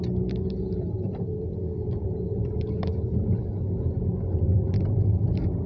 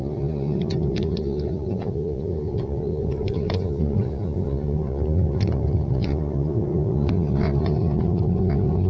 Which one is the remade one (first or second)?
second